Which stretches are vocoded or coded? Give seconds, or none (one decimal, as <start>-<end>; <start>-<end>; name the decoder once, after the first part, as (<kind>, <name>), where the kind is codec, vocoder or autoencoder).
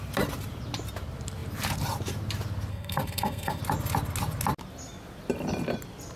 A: 2.7-3.6 (codec, SNAC)